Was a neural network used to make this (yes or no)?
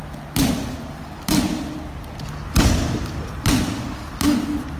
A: no